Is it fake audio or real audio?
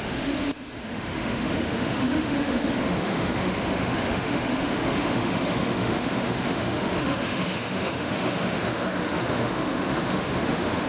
fake